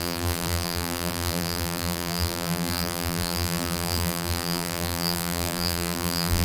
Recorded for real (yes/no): no